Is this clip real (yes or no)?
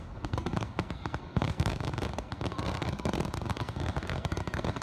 no